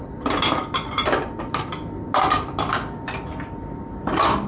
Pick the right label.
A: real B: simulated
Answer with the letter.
A